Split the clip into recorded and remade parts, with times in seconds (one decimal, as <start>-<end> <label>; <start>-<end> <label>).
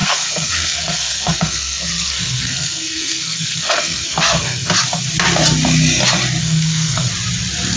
0.0-4.7 remade; 4.7-6.4 recorded; 6.4-7.1 remade; 7.1-7.8 recorded